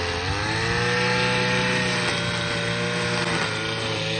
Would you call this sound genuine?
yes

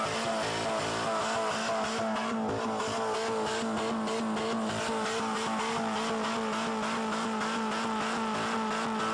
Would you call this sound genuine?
yes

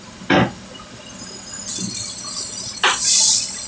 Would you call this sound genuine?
yes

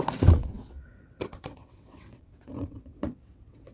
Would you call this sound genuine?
no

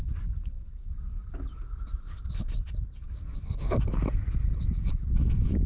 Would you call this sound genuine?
yes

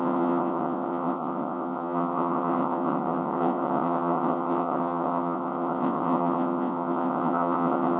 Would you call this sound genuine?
no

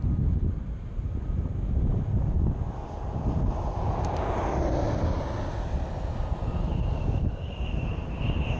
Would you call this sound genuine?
yes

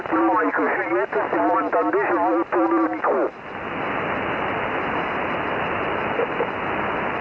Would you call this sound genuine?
yes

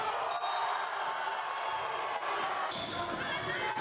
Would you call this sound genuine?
yes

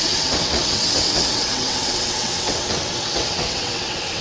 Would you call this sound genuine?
no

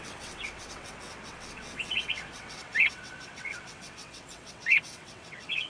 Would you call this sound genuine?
no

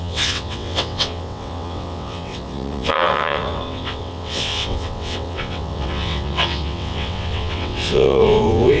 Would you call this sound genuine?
no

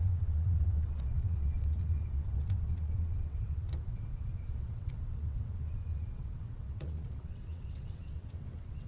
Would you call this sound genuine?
no